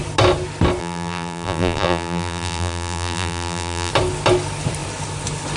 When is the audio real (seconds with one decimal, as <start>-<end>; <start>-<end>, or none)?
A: 0.0-0.8; 3.9-5.6